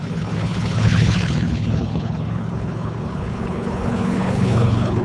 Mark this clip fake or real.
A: fake